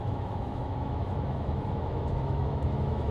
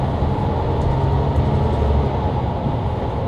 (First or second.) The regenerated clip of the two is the first